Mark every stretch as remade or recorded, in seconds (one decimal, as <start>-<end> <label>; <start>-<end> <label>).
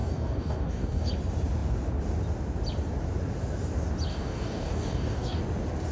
0.0-1.1 remade; 1.1-4.1 recorded; 4.1-5.4 remade; 5.4-5.9 recorded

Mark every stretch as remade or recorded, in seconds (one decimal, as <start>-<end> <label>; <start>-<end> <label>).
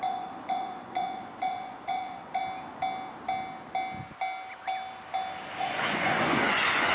0.0-2.4 remade; 2.4-5.6 recorded; 5.6-6.9 remade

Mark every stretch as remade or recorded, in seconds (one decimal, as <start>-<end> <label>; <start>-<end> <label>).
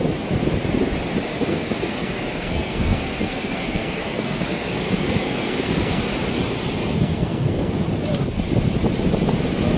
0.0-1.3 recorded; 1.3-6.0 remade; 6.0-6.8 recorded; 6.8-7.7 remade; 7.7-9.8 recorded